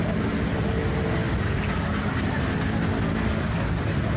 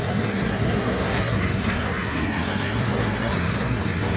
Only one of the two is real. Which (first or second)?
first